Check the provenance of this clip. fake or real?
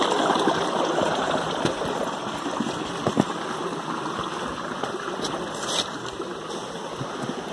real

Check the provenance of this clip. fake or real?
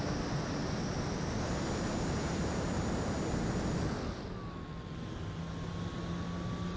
real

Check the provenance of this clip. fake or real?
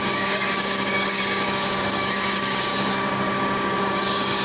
fake